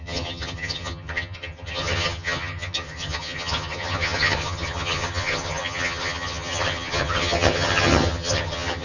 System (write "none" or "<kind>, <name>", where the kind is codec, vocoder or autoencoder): vocoder, HiFi-GAN